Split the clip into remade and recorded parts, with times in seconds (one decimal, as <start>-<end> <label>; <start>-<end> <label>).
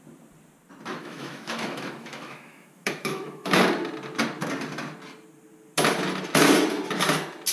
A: 0.0-0.9 recorded; 0.9-3.6 remade; 3.6-7.5 recorded